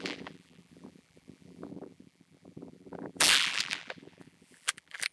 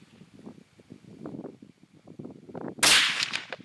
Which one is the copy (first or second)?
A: first